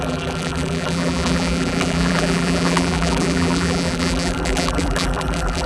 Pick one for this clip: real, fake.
fake